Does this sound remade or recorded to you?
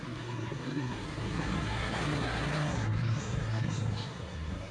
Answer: remade